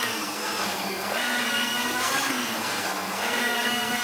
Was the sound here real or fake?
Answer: fake